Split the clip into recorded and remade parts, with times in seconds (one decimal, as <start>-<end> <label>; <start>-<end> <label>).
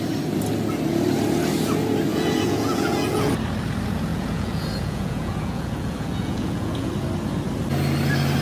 0.0-2.1 recorded; 2.1-3.3 remade; 3.3-4.1 recorded; 4.1-6.9 remade; 6.9-8.4 recorded